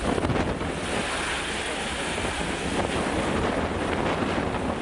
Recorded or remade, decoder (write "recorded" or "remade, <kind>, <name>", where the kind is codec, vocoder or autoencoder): recorded